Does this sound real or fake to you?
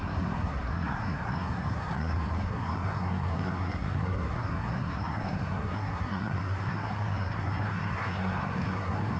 fake